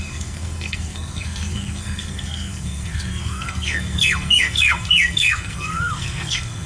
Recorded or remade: remade